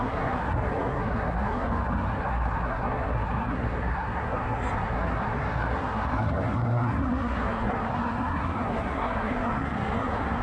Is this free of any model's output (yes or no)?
no